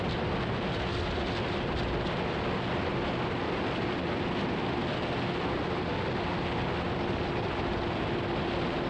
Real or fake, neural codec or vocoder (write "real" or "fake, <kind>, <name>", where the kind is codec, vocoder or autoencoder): real